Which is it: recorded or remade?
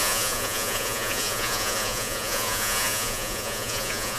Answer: remade